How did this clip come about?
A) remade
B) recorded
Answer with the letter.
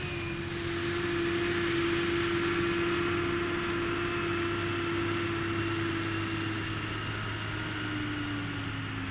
B